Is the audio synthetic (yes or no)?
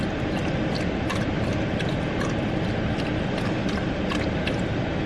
no